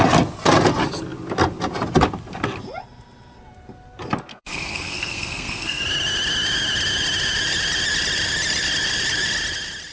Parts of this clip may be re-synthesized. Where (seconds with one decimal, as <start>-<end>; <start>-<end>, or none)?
4.3-5.8